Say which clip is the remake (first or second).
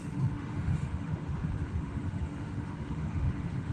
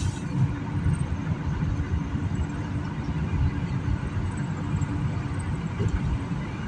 first